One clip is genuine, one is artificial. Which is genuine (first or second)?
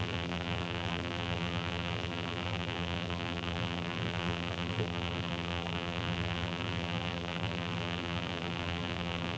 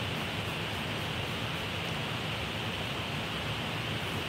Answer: second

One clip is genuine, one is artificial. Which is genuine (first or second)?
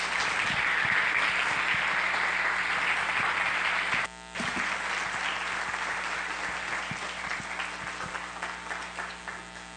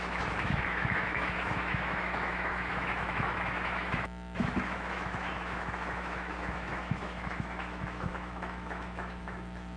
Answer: first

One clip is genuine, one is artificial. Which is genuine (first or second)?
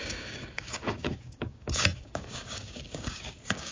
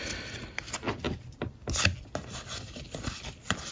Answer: second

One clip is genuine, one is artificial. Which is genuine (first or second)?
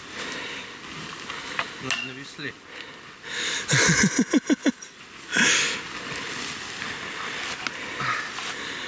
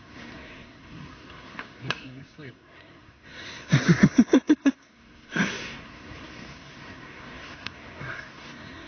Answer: first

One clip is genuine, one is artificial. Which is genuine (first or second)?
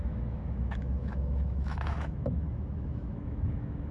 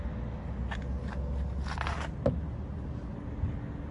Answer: second